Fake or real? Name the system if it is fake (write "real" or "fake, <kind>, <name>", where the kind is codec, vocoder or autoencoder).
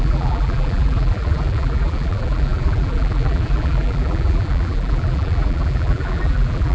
fake, vocoder, BigVGAN v2